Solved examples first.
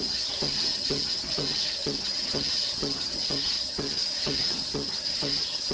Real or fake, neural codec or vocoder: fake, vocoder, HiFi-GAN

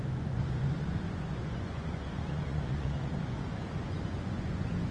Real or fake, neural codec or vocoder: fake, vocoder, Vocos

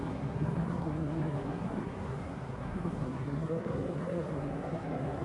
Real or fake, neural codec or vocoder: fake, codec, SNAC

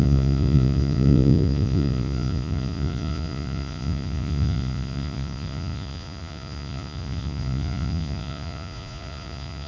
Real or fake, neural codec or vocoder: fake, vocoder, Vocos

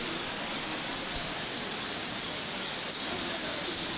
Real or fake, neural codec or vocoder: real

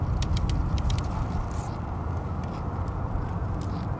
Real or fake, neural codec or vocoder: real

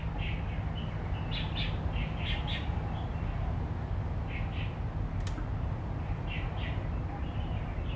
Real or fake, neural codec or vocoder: real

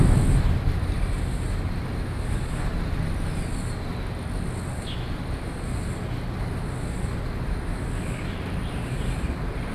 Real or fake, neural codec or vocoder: real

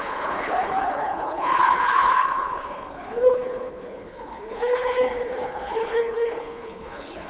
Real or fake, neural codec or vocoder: fake, codec, HILCodec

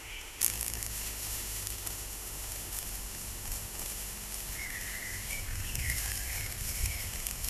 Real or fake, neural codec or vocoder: fake, autoencoder, DAC-VAE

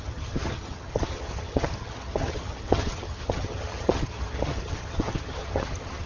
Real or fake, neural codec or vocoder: fake, vocoder, HiFi-GAN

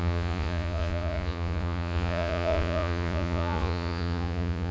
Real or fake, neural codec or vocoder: fake, vocoder, Vocos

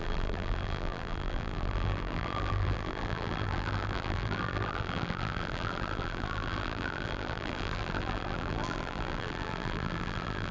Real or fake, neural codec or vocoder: fake, vocoder, BigVGAN v2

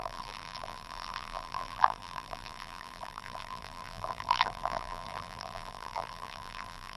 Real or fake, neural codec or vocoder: fake, vocoder, BigVGAN v2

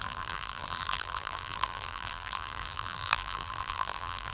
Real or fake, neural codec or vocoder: fake, vocoder, BigVGAN v2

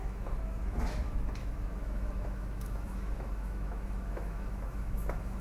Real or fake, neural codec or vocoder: fake, autoencoder, DAC-VAE